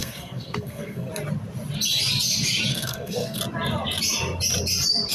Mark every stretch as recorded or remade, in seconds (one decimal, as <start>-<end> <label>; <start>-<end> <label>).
0.0-1.1 remade; 1.1-2.7 recorded; 2.7-3.4 remade; 3.4-5.1 recorded